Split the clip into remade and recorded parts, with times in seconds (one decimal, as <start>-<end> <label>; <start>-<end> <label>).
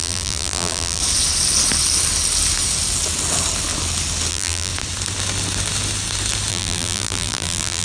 0.0-1.0 remade; 1.0-4.3 recorded; 4.3-4.7 remade; 4.7-6.5 recorded; 6.5-7.8 remade